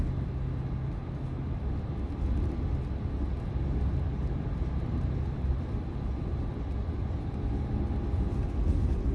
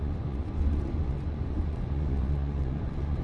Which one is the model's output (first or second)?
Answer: second